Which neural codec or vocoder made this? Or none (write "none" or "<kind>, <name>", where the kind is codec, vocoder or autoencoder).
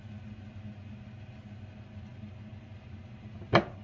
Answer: none